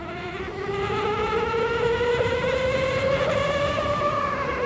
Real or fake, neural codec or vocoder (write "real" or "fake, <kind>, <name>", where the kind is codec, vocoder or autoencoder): fake, vocoder, BigVGAN v2